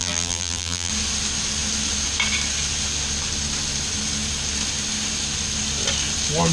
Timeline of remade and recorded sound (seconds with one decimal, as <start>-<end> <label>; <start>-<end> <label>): 0.0-0.9 remade; 0.9-6.5 recorded